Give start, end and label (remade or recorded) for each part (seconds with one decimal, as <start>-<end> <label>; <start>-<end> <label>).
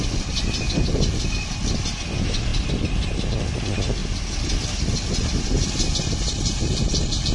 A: 0.0-7.3 recorded